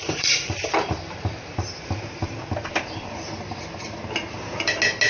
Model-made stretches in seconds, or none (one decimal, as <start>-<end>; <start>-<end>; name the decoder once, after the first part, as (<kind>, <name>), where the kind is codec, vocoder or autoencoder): 0.0-3.1 (vocoder, BigVGAN v2)

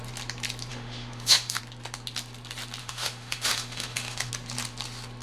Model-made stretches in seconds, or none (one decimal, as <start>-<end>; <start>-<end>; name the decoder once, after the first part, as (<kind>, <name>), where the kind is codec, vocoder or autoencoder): 0.7-1.6 (autoencoder, DAC-VAE); 2.8-4.3

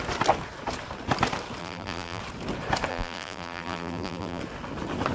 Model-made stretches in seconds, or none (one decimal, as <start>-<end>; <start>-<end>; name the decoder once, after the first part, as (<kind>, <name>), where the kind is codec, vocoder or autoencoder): 1.6-2.2 (vocoder, BigVGAN v2); 2.9-4.4

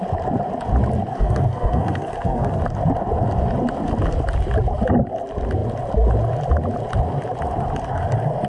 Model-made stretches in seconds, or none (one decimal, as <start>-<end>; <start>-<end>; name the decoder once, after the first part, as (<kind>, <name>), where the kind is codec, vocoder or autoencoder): 1.1-2.6 (codec, SNAC)

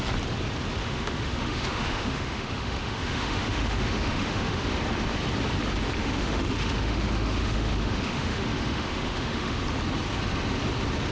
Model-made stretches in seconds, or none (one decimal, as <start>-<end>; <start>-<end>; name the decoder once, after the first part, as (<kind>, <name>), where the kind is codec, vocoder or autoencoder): 0.8-4.7 (autoencoder, DAC-VAE); 6.0-9.6